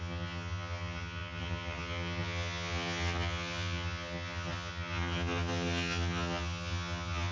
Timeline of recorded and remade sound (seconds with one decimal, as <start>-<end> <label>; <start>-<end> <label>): 0.0-7.3 remade